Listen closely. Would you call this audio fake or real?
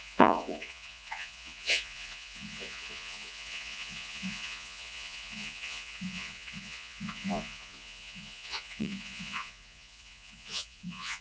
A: fake